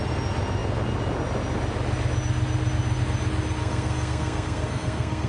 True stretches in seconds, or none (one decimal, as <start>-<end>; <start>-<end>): 0.0-3.6